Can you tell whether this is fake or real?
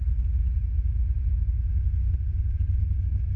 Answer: real